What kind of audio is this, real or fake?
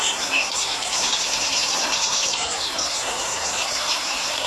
fake